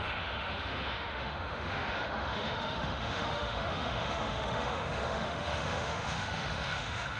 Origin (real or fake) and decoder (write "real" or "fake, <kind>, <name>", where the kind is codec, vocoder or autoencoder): fake, autoencoder, DAC-VAE